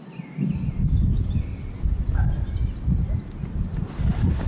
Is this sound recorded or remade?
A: recorded